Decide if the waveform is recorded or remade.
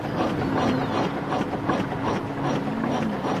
recorded